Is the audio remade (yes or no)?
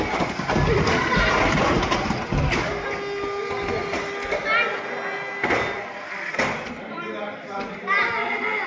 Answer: no